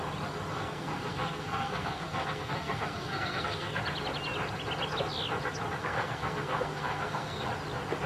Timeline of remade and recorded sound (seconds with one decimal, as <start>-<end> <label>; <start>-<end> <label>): 0.0-0.5 recorded; 0.5-3.8 remade; 3.8-5.8 recorded; 5.8-7.5 remade; 7.5-8.1 recorded